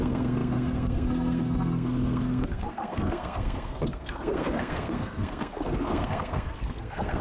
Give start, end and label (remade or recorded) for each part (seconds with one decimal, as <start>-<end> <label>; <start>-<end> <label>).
0.0-7.2 remade